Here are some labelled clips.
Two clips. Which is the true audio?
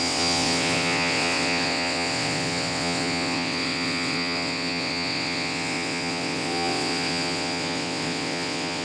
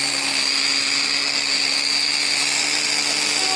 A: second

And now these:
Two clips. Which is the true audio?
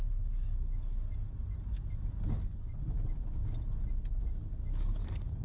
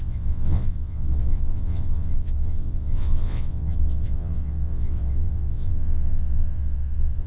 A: first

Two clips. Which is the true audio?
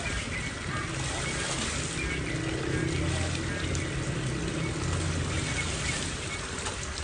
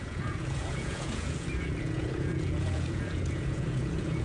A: first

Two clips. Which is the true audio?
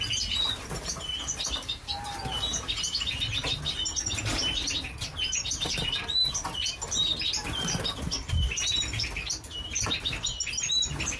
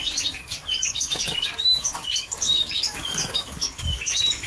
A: first